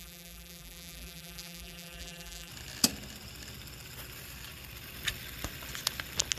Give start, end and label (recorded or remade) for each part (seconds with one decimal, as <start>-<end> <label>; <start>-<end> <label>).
0.0-2.5 remade; 2.5-6.4 recorded